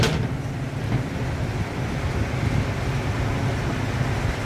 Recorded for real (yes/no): yes